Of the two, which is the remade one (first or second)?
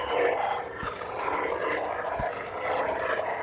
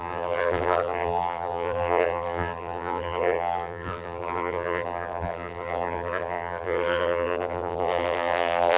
second